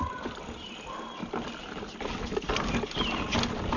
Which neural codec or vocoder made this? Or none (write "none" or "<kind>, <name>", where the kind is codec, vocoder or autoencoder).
none